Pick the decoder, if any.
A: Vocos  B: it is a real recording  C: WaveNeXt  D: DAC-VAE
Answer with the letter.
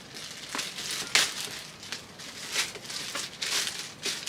B